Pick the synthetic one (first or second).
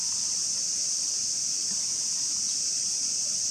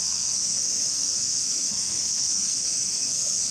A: second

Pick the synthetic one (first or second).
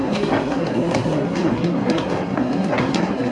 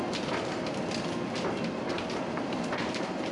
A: first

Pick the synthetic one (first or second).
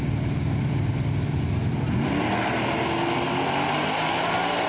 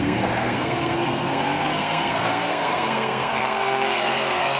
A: second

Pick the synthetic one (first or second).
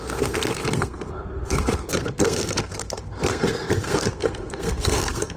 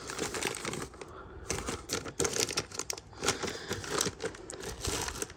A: first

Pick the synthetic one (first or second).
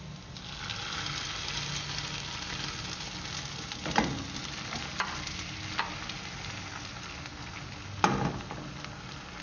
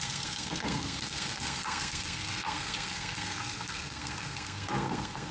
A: second